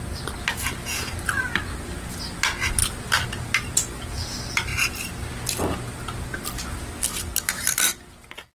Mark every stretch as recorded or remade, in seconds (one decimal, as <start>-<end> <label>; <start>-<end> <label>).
0.0-4.7 recorded; 4.7-5.3 remade; 5.3-8.5 recorded